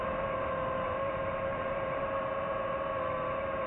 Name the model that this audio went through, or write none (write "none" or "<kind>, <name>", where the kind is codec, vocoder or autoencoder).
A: vocoder, BigVGAN v2